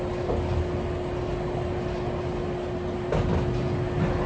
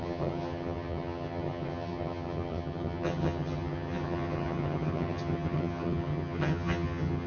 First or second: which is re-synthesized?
second